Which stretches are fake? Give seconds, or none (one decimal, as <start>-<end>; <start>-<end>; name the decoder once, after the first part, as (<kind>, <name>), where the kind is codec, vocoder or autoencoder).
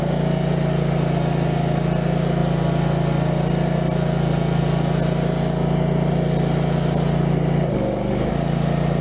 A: none